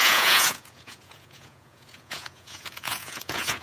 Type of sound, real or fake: fake